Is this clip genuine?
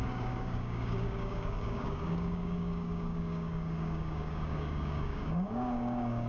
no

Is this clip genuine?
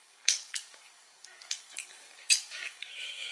no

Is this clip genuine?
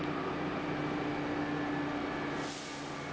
yes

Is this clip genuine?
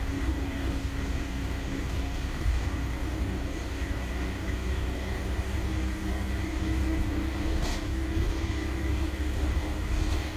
no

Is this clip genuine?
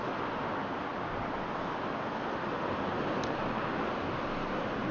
yes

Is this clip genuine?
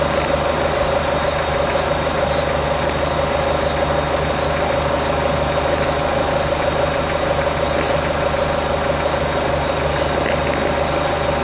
yes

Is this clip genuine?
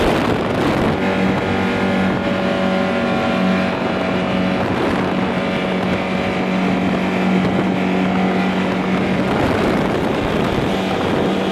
yes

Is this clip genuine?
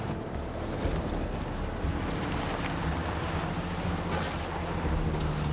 yes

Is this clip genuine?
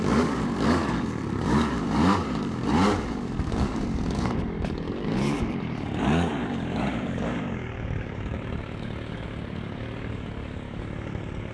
no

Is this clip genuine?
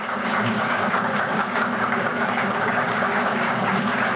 no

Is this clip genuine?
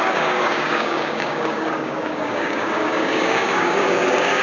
no